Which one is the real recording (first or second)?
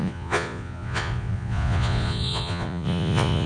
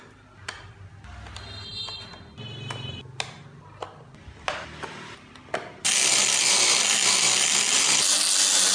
second